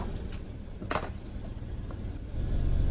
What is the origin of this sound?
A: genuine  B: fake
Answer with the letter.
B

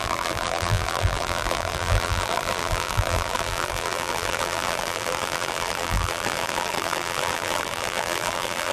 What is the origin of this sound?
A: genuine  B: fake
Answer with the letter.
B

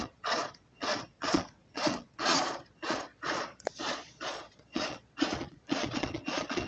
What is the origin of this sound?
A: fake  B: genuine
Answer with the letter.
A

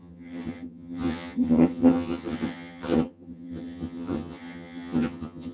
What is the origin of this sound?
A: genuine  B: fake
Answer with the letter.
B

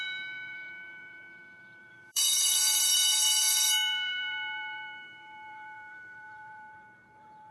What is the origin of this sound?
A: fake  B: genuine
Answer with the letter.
A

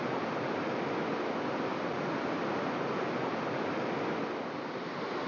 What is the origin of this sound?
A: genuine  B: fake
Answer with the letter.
A